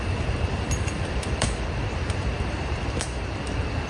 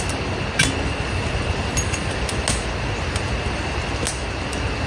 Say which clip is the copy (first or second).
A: first